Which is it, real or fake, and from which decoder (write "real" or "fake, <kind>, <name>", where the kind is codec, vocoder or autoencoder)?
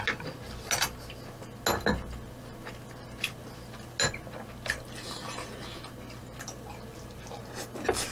real